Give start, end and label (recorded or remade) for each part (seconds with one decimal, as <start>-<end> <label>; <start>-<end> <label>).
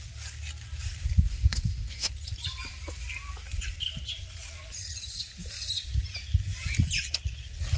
0.0-1.3 recorded; 1.3-2.1 remade; 2.1-7.8 recorded